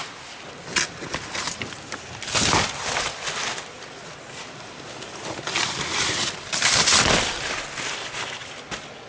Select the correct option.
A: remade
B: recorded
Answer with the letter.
B